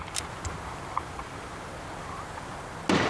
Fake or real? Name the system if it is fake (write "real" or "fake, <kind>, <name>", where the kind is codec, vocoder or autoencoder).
real